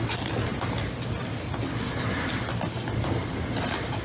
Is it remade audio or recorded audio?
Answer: recorded